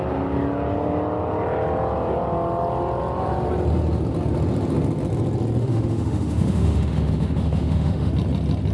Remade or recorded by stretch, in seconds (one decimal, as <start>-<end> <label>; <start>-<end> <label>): 0.0-5.6 recorded; 5.6-8.1 remade; 8.1-8.7 recorded